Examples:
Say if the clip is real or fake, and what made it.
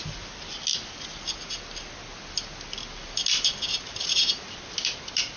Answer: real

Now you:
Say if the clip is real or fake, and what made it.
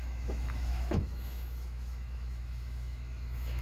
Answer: fake, autoencoder, DAC-VAE